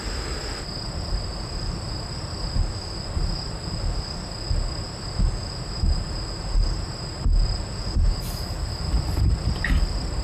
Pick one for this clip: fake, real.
real